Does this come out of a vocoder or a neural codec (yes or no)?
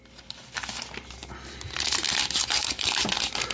no